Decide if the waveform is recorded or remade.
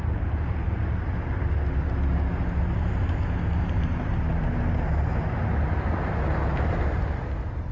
recorded